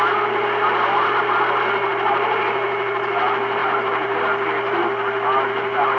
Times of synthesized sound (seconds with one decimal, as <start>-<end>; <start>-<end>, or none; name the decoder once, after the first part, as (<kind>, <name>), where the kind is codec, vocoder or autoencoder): 3.6-4.2 (vocoder, BigVGAN v2)